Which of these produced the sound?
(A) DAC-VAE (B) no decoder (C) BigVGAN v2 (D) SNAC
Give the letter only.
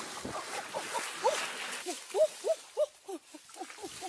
B